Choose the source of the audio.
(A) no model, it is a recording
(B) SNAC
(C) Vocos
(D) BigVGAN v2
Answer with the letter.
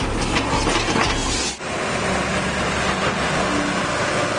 A